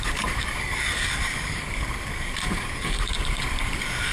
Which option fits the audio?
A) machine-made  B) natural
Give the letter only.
A